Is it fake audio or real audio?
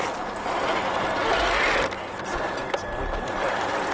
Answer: real